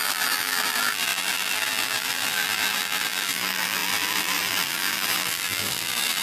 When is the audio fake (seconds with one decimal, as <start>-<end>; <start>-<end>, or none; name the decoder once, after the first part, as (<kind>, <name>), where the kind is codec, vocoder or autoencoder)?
0.0-6.2 (vocoder, BigVGAN v2)